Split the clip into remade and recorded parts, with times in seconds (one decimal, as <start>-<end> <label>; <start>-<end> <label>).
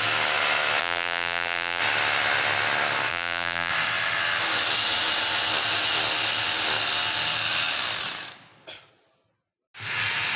0.0-0.8 recorded; 0.8-1.8 remade; 1.8-3.1 recorded; 3.1-3.7 remade; 3.7-10.4 recorded